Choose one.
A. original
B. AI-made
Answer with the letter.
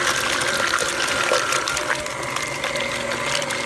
A